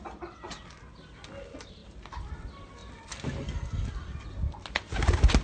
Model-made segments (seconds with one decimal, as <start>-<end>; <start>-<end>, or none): none